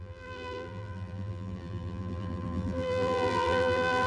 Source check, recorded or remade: remade